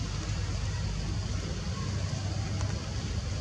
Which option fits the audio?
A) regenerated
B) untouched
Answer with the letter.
B